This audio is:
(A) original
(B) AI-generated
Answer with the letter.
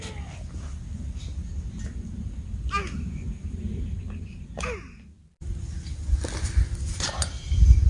A